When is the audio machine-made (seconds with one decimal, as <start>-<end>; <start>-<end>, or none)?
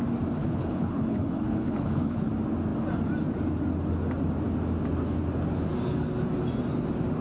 0.4-2.3